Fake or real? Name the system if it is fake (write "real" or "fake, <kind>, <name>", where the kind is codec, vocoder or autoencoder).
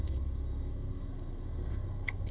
fake, codec, SNAC